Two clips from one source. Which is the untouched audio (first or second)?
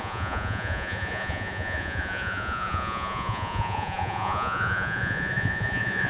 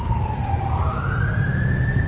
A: second